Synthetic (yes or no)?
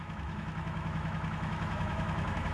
yes